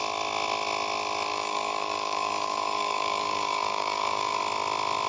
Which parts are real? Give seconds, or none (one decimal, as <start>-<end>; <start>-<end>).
0.0-1.3; 4.4-5.1